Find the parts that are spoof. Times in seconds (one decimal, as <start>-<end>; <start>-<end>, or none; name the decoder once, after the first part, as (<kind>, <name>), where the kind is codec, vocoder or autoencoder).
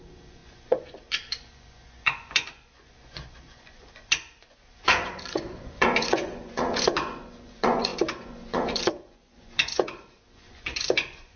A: 0.0-11.4 (vocoder, Vocos)